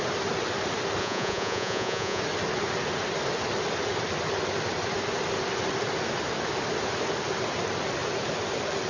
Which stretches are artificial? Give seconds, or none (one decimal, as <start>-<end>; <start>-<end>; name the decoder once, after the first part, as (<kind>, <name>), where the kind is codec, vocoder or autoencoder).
1.0-2.2 (vocoder, Vocos)